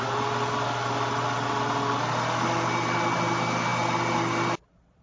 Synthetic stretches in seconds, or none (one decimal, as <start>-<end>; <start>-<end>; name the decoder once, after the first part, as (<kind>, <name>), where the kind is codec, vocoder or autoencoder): none